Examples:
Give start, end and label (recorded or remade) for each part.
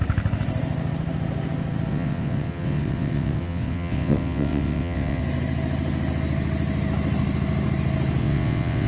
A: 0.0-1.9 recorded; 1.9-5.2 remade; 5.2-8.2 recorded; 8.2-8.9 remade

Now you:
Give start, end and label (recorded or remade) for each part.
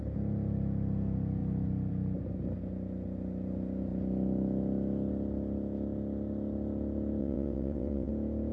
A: 0.0-7.2 recorded; 7.2-8.1 remade; 8.1-8.5 recorded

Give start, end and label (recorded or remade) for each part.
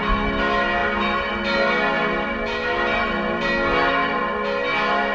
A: 0.0-5.1 recorded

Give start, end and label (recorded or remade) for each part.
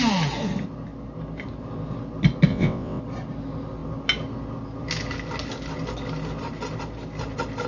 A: 0.0-2.5 recorded; 2.5-3.0 remade; 3.0-7.7 recorded